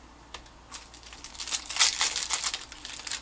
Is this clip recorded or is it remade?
recorded